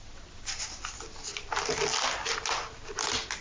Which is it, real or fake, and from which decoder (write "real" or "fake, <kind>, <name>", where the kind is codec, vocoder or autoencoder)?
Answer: real